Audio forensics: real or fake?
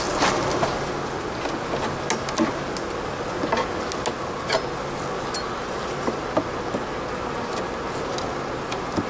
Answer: real